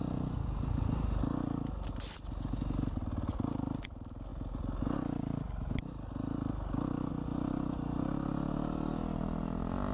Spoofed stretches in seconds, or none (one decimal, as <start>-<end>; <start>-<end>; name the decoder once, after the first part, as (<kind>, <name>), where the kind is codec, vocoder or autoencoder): none